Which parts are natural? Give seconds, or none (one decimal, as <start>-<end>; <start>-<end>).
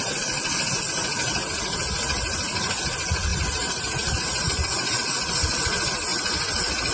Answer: 0.0-3.3; 4.9-6.9